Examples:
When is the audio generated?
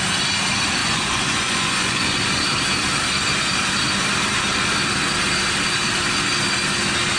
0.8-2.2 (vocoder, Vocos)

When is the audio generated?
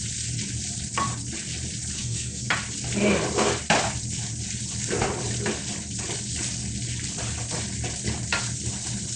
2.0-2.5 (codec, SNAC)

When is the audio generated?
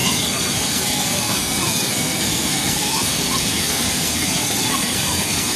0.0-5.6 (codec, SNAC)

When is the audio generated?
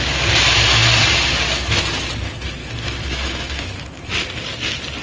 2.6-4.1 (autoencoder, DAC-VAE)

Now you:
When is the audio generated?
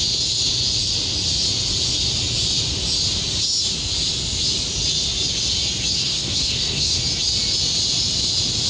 5.9-7.0 (codec, SNAC)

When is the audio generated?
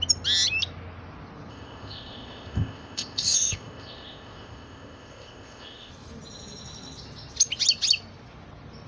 1.5-5.9 (codec, ZipCodec)